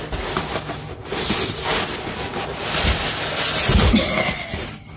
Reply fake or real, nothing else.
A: real